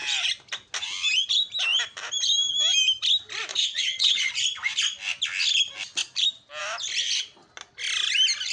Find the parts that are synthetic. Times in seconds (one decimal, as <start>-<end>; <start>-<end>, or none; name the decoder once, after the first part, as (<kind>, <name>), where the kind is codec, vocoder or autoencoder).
3.5-4.3 (vocoder, WaveNeXt)

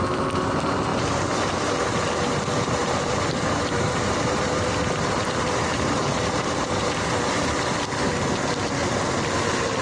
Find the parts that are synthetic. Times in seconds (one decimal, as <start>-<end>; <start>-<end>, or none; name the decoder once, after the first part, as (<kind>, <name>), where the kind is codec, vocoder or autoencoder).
0.9-2.0 (vocoder, BigVGAN v2); 2.8-7.3